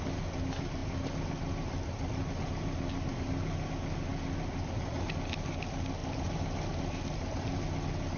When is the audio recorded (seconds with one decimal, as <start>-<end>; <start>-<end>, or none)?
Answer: 0.0-8.2